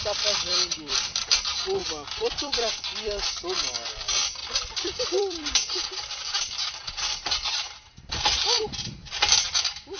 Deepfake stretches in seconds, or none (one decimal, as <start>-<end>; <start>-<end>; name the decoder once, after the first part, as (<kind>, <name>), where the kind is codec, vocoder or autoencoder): 0.5-1.3 (vocoder, BigVGAN v2); 1.8-3.3; 4.4-8.1